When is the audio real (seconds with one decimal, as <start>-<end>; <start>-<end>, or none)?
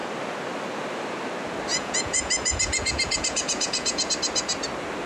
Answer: 0.0-1.7; 4.1-5.1